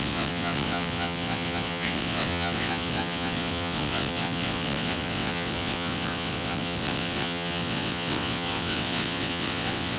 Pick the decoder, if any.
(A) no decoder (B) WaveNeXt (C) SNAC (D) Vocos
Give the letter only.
B